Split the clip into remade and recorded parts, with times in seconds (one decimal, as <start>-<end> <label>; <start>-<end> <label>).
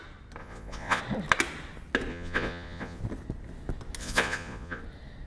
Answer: 0.0-0.4 recorded; 0.4-1.0 remade; 1.0-2.1 recorded; 2.1-3.0 remade; 3.0-4.0 recorded; 4.0-4.8 remade; 4.8-5.3 recorded